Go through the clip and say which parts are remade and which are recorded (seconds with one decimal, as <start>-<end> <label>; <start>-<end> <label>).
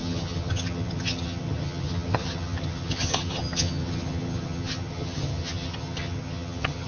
0.0-6.9 remade